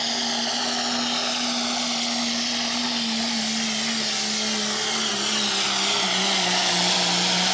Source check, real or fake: real